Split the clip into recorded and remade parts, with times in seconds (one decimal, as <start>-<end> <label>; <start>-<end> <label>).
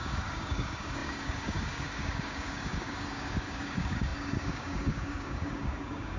0.0-6.2 remade